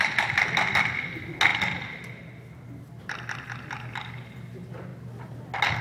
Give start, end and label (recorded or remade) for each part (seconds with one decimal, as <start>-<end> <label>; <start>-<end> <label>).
0.0-5.8 recorded